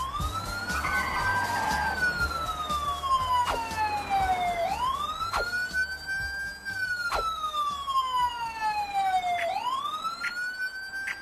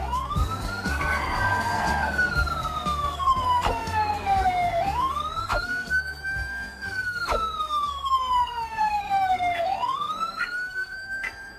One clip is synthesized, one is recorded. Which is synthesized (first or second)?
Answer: second